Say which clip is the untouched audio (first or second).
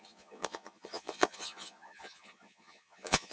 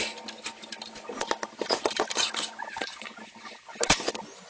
second